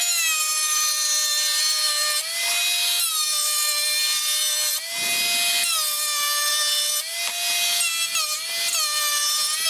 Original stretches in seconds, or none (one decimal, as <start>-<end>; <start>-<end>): 0.0-9.7